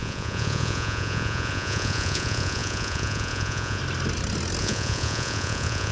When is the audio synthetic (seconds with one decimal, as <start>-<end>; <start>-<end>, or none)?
0.0-3.8; 4.6-5.9